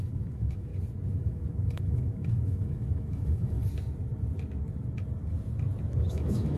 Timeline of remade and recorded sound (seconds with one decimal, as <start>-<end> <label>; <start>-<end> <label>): 0.0-0.7 remade; 0.7-1.2 recorded; 1.2-3.6 remade; 3.6-6.1 recorded; 6.1-6.6 remade